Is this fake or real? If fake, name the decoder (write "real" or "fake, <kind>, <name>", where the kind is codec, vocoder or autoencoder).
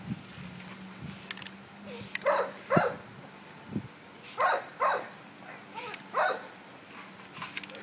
real